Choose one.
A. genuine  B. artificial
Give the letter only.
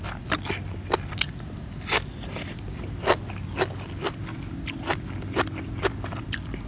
A